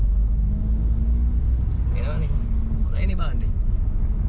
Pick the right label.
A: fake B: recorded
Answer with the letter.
B